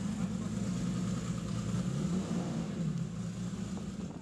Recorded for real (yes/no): yes